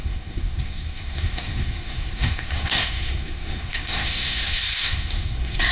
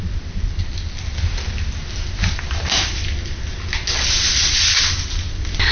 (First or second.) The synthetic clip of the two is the first